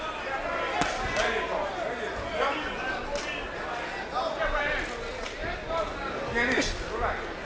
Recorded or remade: recorded